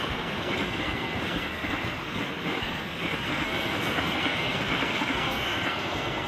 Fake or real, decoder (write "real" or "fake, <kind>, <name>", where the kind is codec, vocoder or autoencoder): fake, codec, SNAC